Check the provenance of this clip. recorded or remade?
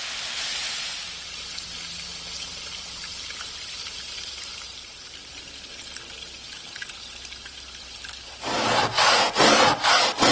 remade